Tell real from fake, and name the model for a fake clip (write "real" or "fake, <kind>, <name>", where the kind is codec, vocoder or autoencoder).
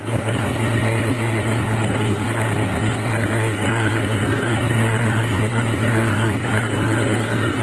fake, codec, SNAC